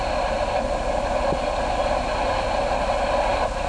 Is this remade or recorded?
recorded